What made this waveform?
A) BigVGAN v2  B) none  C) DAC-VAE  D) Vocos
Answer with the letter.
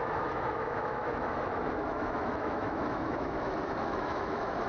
C